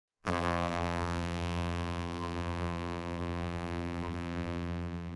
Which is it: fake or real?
fake